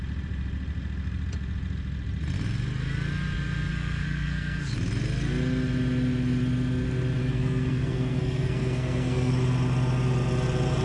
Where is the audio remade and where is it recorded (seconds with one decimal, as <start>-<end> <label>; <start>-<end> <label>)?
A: 0.0-3.7 recorded; 3.7-4.7 remade; 4.7-7.2 recorded; 7.2-9.3 remade; 9.3-10.8 recorded